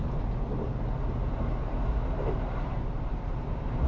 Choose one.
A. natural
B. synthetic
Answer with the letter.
A